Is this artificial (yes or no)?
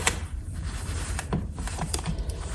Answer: yes